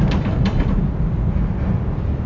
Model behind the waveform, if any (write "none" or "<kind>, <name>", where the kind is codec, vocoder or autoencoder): vocoder, BigVGAN v2